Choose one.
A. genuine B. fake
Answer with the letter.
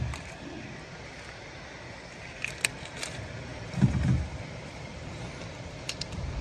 B